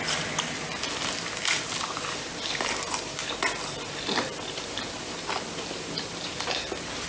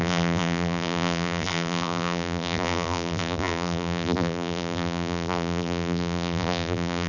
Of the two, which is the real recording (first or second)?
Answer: first